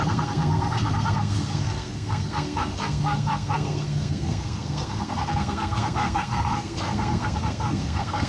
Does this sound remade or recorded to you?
remade